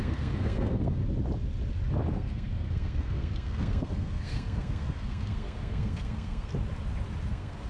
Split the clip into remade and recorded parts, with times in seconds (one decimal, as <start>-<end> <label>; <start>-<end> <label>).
0.0-1.0 remade; 1.0-2.1 recorded; 2.1-6.5 remade; 6.5-7.3 recorded; 7.3-7.7 remade